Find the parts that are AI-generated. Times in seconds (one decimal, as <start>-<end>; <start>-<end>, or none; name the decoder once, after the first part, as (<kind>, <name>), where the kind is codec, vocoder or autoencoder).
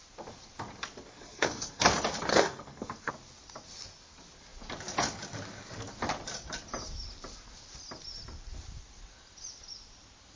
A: 1.1-1.8 (codec, SNAC); 2.3-3.1